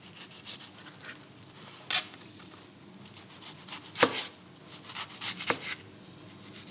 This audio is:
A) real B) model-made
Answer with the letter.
A